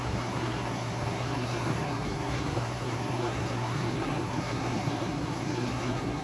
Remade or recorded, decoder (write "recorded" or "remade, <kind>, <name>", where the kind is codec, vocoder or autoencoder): remade, codec, SNAC